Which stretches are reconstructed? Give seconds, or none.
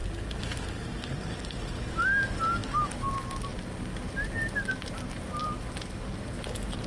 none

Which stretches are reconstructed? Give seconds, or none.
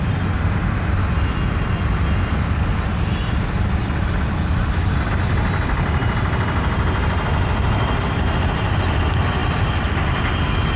none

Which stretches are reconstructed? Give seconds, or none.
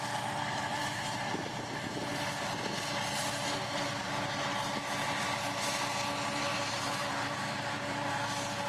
0.8-2.0 (vocoder, BigVGAN v2); 6.5-8.1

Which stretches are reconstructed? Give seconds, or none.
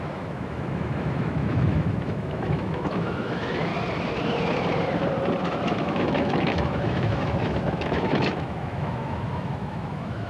0.0-3.7 (autoencoder, DAC-VAE); 5.4-10.3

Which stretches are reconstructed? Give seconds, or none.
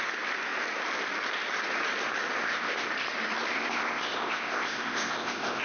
2.4-2.9 (codec, ZipCodec); 3.5-5.6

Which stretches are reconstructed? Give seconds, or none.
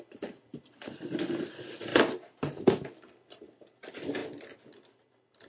none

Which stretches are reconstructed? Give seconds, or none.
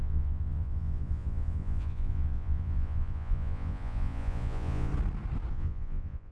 0.0-4.9 (vocoder, Vocos); 5.5-6.3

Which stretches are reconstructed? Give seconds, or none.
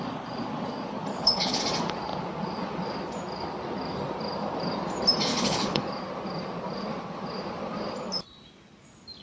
1.1-1.6 (codec, HILCodec); 5.3-5.9